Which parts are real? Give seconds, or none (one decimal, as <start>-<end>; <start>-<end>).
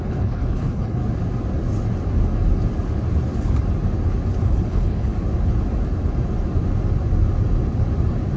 1.0-4.4; 5.1-8.4